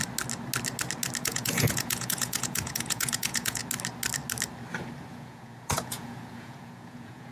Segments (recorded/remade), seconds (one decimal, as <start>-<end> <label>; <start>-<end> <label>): 0.0-1.2 recorded; 1.2-3.6 remade; 3.6-5.1 recorded; 5.1-7.3 remade